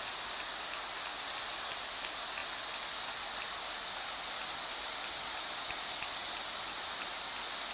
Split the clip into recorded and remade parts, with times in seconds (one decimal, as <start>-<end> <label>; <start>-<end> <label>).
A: 0.0-7.7 recorded